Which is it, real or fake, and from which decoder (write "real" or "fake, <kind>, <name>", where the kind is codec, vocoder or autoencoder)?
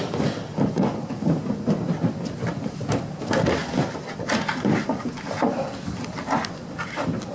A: real